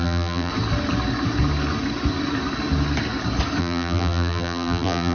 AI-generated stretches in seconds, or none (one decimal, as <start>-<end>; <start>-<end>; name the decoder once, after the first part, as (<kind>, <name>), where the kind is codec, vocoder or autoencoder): 0.0-0.5 (vocoder, BigVGAN v2); 3.6-5.1